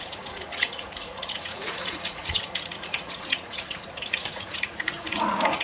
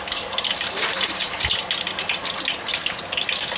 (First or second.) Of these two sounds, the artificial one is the first